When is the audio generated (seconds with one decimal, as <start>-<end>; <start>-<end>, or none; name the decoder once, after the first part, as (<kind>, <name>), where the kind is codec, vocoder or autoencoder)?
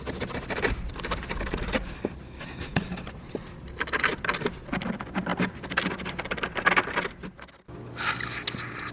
none